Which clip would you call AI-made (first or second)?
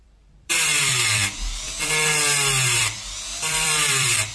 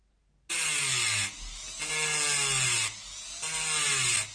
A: first